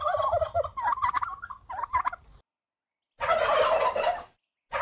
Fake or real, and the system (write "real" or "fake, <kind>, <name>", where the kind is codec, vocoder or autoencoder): real